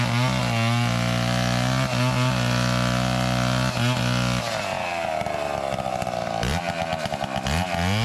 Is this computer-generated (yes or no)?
no